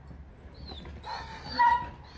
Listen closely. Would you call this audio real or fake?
real